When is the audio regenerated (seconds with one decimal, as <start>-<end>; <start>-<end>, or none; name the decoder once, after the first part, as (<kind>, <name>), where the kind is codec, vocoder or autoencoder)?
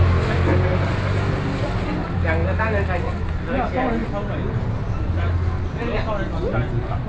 none